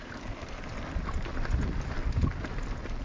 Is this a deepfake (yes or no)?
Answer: no